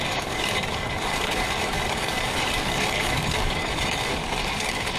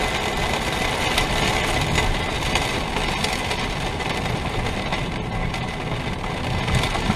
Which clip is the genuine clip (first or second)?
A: second